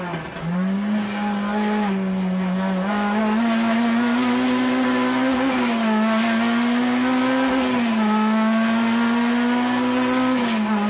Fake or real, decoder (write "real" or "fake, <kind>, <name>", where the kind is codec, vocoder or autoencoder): real